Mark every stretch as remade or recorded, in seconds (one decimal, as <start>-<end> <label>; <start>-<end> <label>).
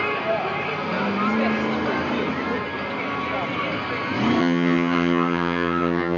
0.0-4.4 recorded; 4.4-6.2 remade